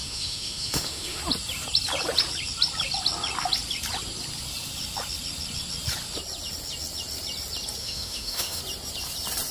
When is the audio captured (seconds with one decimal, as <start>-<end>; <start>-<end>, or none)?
1.2-7.8; 8.6-9.5